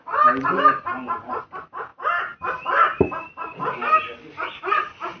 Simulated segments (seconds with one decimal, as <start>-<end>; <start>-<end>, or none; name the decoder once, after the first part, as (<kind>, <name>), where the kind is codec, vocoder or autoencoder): none